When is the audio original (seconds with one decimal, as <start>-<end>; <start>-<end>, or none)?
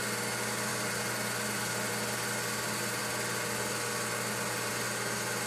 0.0-5.5